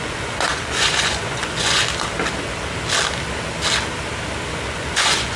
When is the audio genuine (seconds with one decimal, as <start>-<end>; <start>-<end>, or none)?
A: 1.8-4.5